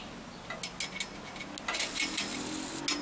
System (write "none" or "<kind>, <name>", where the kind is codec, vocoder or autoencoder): none